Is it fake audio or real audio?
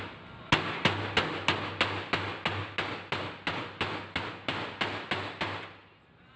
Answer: real